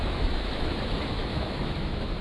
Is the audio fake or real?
fake